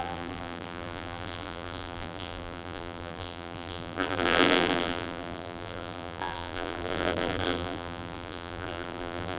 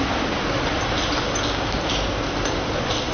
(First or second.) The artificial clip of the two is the first